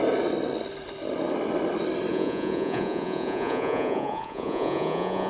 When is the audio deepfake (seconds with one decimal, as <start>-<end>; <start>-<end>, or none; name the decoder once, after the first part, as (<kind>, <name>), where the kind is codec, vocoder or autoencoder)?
2.1-5.3 (vocoder, Vocos)